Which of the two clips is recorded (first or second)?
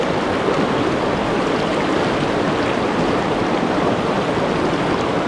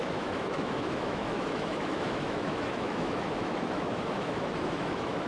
first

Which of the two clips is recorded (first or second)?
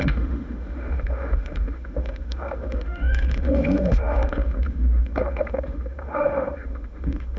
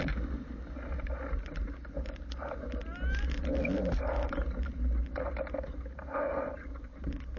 second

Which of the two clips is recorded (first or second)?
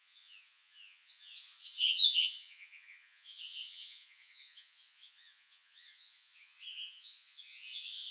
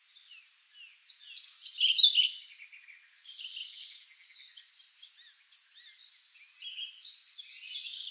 second